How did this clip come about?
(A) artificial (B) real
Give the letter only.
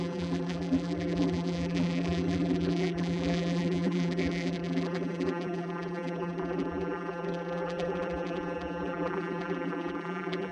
A